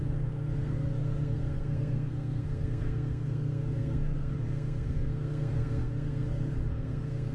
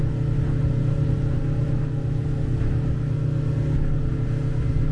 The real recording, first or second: second